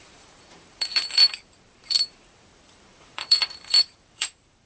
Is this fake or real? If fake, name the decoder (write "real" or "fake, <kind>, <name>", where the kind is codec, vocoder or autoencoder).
fake, vocoder, BigVGAN v2